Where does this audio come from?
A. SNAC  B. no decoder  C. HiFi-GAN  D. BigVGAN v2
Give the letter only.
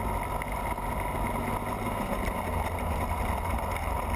B